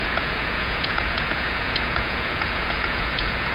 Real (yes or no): no